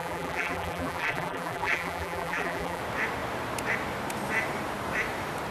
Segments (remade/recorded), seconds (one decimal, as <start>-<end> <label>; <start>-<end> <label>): 0.0-2.8 remade; 2.8-5.5 recorded